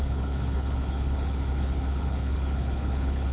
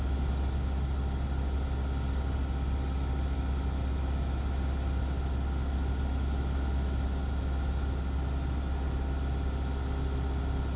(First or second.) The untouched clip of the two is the second